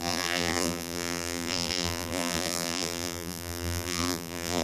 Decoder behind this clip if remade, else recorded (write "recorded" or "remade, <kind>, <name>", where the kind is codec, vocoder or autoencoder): remade, vocoder, BigVGAN v2